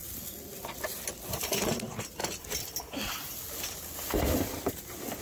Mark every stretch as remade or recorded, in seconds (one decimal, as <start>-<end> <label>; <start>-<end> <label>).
0.0-5.2 recorded